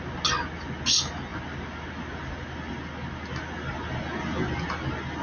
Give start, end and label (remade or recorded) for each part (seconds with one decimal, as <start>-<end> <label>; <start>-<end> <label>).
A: 0.0-5.2 recorded